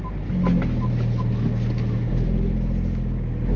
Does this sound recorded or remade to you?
recorded